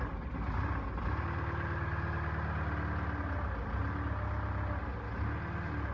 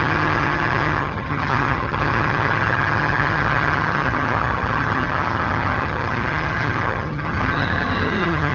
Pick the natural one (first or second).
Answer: first